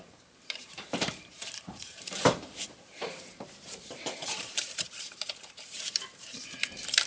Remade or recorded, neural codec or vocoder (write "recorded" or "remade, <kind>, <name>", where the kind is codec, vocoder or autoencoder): remade, vocoder, BigVGAN v2